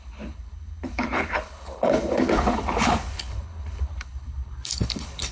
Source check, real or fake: fake